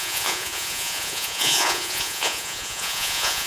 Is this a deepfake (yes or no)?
yes